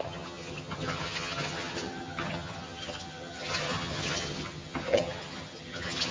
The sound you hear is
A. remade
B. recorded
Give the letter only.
A